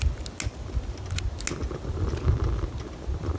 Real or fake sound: real